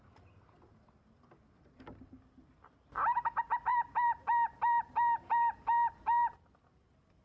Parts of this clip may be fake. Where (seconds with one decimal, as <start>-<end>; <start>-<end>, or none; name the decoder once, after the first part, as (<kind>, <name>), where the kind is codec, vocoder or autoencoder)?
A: none